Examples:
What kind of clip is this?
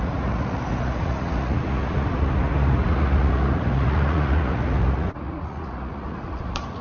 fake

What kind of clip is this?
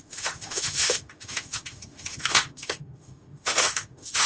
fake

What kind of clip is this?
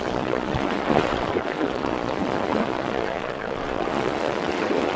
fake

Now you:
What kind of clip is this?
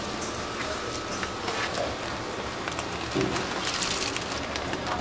real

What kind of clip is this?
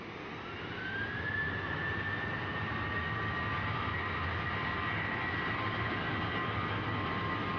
real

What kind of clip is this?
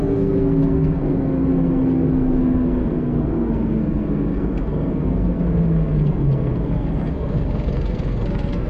fake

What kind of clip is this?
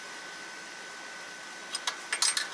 real